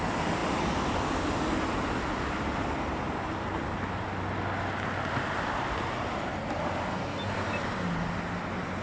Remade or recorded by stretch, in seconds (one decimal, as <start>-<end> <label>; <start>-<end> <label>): 0.0-8.8 recorded